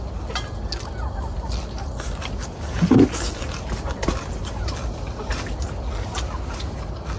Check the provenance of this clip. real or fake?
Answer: real